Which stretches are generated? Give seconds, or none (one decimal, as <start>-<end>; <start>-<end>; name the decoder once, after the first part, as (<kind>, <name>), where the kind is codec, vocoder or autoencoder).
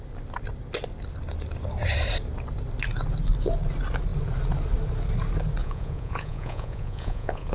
5.6-7.5 (vocoder, Vocos)